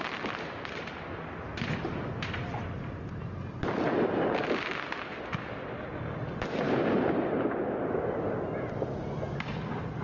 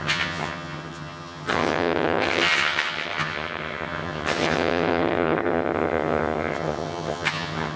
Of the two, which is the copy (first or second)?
second